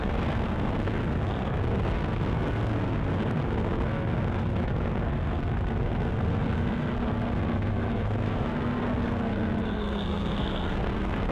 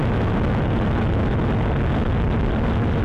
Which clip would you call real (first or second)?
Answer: second